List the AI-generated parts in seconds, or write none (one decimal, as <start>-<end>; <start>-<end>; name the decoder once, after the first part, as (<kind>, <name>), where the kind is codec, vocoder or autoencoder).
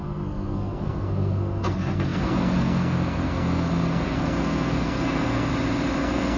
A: 0.0-5.5 (codec, SNAC); 6.0-6.4